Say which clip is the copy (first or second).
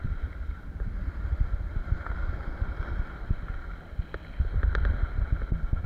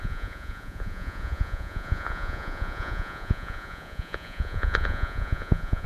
second